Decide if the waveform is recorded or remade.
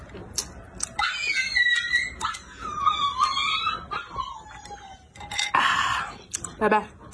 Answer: recorded